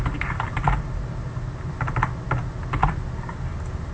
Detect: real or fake real